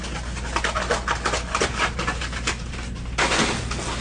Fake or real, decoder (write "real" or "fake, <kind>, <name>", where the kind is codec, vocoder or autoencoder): real